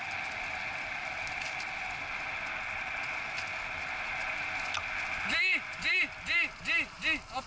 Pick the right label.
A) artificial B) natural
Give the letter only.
B